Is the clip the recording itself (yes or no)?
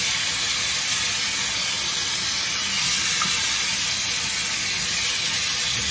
yes